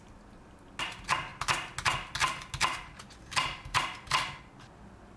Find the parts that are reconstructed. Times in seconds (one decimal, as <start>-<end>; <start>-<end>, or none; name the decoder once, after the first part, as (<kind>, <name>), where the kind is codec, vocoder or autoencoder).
none